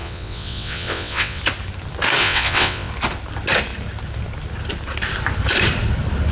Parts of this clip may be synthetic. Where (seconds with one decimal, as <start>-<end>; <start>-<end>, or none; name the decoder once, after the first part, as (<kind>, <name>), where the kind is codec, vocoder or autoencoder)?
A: 0.0-1.4 (vocoder, WaveNeXt); 2.2-2.9